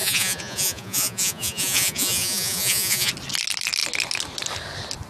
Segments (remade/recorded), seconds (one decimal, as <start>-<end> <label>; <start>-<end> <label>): 0.0-3.1 remade; 3.1-5.1 recorded